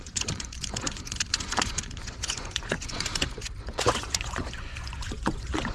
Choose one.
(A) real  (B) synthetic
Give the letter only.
B